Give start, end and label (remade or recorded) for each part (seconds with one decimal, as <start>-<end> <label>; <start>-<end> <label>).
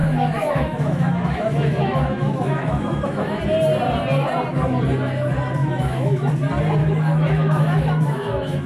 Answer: 0.0-3.4 remade; 3.4-5.6 recorded; 5.6-6.3 remade; 6.3-6.8 recorded; 6.8-8.7 remade